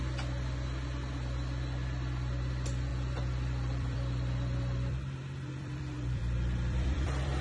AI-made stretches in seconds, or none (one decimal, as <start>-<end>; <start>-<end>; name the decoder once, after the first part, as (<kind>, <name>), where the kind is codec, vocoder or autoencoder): 2.9-7.4 (vocoder, BigVGAN v2)